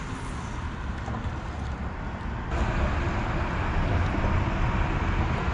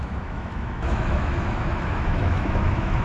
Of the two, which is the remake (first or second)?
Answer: second